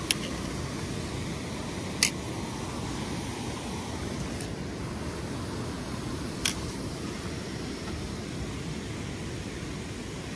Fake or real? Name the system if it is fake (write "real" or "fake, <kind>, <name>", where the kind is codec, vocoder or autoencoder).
real